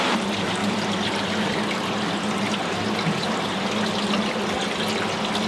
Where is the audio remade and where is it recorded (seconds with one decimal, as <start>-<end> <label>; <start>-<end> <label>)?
0.0-0.6 recorded; 0.6-1.3 remade; 1.3-5.5 recorded